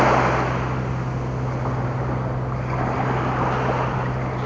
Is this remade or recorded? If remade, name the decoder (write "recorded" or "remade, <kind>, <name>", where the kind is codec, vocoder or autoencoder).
recorded